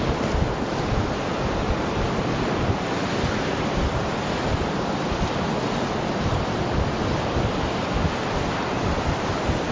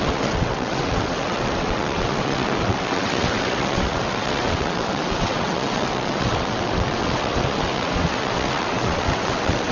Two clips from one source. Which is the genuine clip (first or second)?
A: first